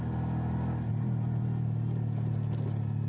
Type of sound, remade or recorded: recorded